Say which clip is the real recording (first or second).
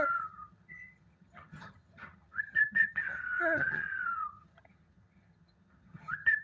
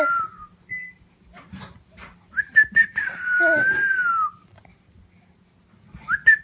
second